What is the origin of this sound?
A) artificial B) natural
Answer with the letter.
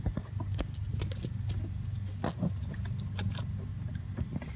B